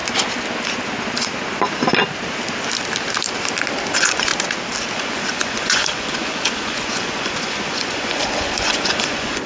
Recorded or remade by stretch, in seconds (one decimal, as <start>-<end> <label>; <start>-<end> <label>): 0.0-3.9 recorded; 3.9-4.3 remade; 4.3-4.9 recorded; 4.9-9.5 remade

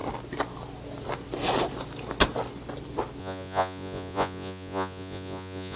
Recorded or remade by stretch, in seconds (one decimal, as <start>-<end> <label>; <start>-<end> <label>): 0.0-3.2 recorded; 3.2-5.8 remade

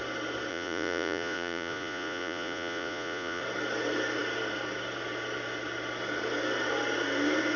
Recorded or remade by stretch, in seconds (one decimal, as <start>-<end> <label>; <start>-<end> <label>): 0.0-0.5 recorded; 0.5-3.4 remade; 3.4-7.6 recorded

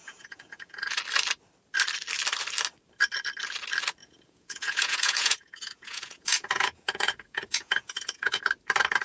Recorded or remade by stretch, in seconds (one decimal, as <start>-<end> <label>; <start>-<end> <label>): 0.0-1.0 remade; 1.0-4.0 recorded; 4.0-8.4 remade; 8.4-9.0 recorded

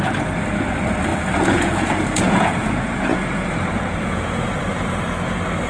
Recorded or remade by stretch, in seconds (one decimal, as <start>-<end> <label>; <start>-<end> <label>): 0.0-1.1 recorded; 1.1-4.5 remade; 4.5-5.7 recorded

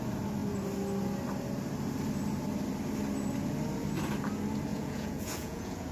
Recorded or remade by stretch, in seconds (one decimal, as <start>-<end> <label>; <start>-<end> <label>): 0.0-4.7 recorded; 4.7-5.9 remade